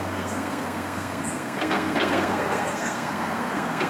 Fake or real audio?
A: fake